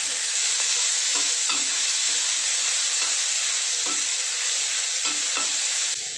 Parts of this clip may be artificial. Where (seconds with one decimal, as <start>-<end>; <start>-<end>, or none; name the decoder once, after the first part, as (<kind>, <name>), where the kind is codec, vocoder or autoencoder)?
0.0-2.5 (autoencoder, DAC-VAE); 5.6-6.2